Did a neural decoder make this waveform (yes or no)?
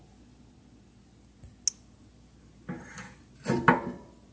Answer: no